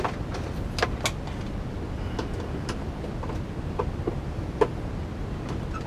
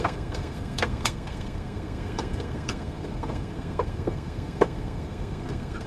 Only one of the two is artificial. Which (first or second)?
second